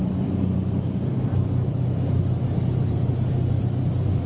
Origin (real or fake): fake